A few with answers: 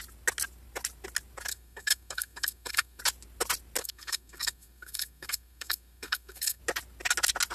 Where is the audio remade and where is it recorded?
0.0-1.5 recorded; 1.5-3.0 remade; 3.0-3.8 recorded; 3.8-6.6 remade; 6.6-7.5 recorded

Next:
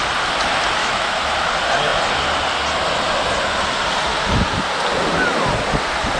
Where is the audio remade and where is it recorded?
0.0-0.8 recorded; 0.8-1.5 remade; 1.5-6.2 recorded

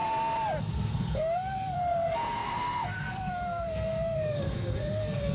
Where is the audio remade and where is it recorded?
0.0-0.6 recorded; 0.6-5.3 remade